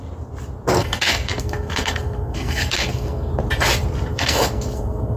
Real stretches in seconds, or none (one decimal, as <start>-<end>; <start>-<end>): 0.0-0.7; 3.3-4.1